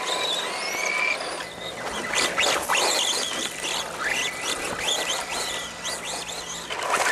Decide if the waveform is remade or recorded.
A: recorded